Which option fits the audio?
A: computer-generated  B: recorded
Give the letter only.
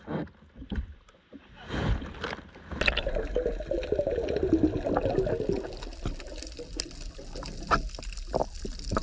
B